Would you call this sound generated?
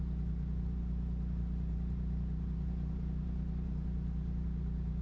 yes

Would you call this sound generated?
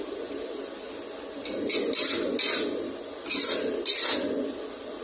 no